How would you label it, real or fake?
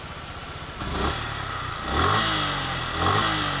real